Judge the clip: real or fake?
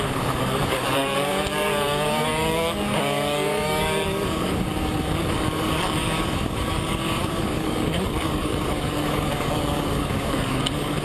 fake